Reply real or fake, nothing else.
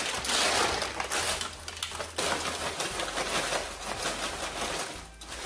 real